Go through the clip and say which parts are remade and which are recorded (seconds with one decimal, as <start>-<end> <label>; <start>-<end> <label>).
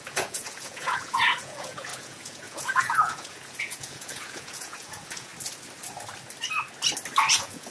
0.0-5.3 remade; 5.3-7.3 recorded; 7.3-7.7 remade